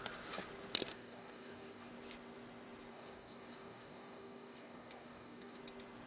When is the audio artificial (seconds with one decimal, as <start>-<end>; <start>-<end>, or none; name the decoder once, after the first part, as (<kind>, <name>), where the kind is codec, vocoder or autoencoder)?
0.9-1.9 (codec, DAC); 2.9-5.6

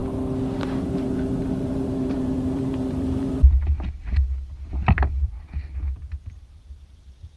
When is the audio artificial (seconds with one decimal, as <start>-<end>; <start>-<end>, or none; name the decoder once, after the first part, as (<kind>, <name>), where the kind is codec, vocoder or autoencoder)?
0.6-5.6 (vocoder, BigVGAN v2); 6.1-7.4

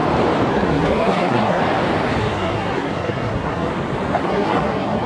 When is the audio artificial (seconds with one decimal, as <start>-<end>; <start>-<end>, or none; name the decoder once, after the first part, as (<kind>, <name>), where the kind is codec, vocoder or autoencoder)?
0.5-1.6 (codec, SNAC); 2.2-3.7; 4.2-5.1

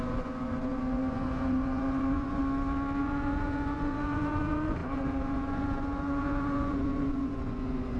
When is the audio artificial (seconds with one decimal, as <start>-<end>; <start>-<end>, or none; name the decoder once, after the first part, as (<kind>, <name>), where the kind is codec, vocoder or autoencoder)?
0.0-2.4 (vocoder, Vocos); 3.0-8.0

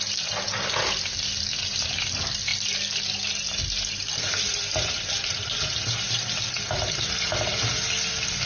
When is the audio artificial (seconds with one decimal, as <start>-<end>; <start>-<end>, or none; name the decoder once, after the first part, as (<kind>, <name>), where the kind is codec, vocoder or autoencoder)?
none

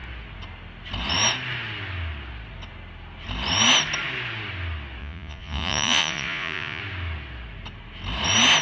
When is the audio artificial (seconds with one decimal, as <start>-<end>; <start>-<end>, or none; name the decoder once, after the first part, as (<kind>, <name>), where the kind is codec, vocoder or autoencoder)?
5.0-6.8 (vocoder, Vocos)

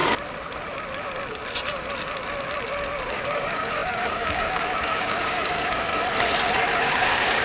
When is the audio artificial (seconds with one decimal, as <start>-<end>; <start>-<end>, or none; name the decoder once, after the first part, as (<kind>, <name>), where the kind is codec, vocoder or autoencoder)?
3.1-5.9 (codec, DAC); 6.8-7.4